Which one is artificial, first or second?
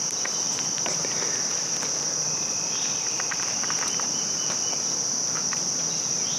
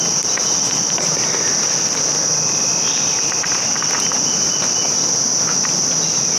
first